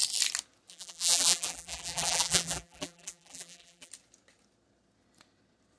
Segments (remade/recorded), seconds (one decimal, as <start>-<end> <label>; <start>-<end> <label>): 0.0-0.7 recorded; 0.7-3.9 remade; 3.9-5.8 recorded

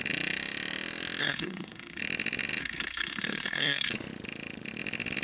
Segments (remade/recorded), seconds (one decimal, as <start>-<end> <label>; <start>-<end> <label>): 0.0-1.2 recorded; 1.2-2.0 remade; 2.0-2.6 recorded; 2.6-3.9 remade; 3.9-5.2 recorded

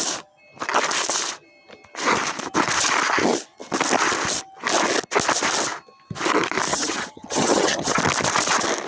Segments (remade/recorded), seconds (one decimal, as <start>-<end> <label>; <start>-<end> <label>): 0.0-6.7 recorded; 6.7-8.0 remade; 8.0-8.9 recorded

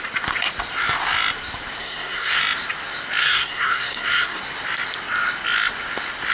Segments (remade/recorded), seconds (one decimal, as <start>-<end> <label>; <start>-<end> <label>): 0.0-1.8 recorded; 1.8-2.4 remade; 2.4-3.2 recorded; 3.2-4.4 remade; 4.4-6.3 recorded

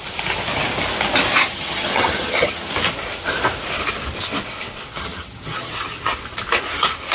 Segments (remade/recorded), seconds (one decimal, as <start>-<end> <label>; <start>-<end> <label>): 0.0-1.4 recorded; 1.4-2.7 remade; 2.7-4.9 recorded; 4.9-5.7 remade; 5.7-7.1 recorded